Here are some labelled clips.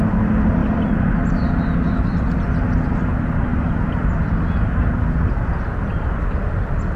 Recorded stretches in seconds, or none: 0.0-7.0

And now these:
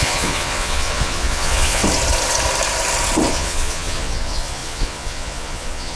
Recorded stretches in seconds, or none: 1.8-3.3

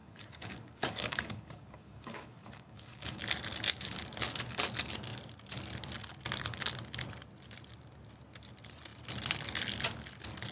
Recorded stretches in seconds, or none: 3.2-10.5

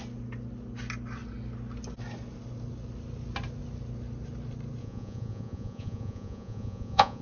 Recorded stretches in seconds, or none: 0.0-4.8

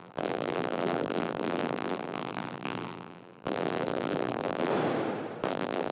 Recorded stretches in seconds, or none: 4.7-5.5

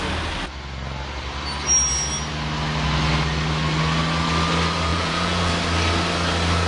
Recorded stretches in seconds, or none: 0.0-4.9; 5.5-6.7